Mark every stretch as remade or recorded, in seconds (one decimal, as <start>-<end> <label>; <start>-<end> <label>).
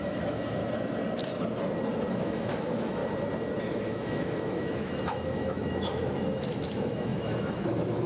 0.0-0.6 remade; 0.6-2.1 recorded; 2.1-3.0 remade; 3.0-3.6 recorded; 3.6-8.1 remade